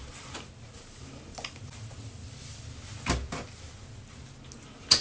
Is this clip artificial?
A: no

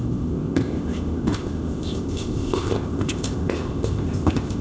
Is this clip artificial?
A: yes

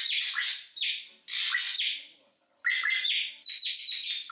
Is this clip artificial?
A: no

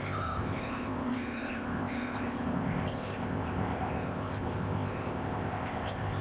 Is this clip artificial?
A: yes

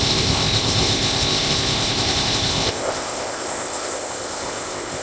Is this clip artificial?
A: yes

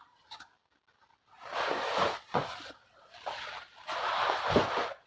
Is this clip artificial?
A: no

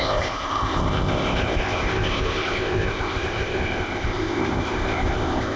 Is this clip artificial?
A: yes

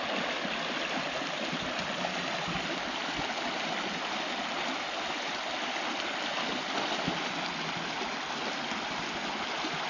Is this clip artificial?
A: no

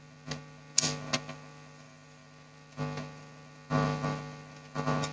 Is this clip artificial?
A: no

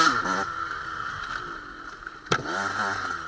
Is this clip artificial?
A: no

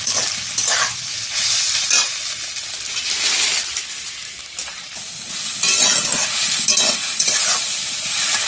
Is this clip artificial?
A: no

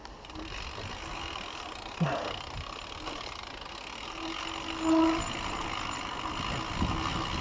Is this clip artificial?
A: no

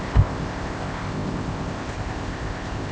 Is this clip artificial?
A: yes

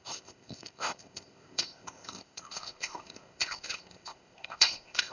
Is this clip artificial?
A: yes